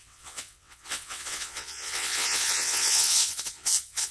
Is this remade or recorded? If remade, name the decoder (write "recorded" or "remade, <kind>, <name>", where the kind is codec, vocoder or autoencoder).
remade, vocoder, WaveNeXt